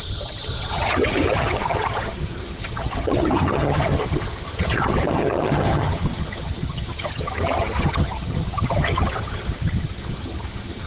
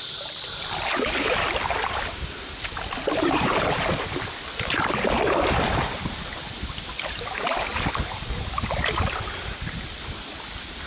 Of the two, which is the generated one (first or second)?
first